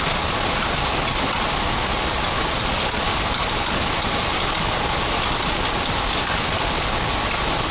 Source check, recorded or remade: recorded